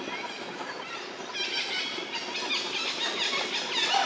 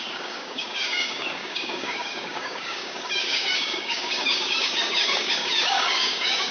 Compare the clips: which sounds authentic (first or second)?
first